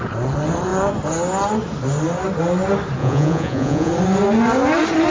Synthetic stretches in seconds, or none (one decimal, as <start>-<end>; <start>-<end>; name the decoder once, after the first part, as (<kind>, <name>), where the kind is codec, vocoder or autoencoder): 3.0-3.9 (vocoder, Vocos)